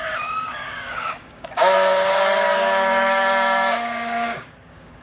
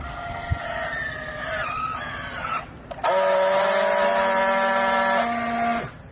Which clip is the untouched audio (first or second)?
second